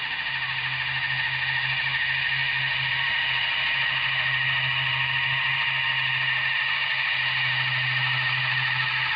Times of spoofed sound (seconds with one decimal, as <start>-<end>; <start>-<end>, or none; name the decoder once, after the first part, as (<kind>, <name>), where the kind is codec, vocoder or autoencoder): none